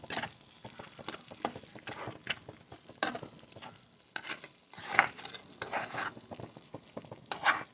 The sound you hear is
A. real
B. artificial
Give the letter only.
A